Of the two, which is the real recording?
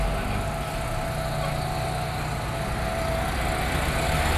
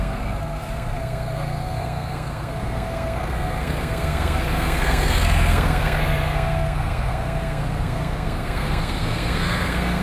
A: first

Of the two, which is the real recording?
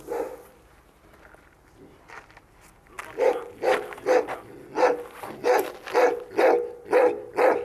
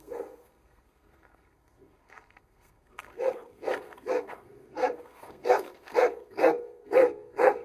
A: first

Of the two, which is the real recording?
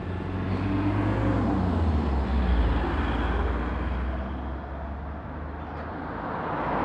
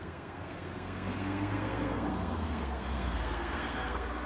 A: first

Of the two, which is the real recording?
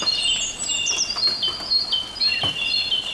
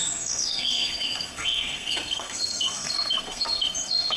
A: first